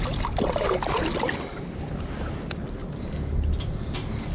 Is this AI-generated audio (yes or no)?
no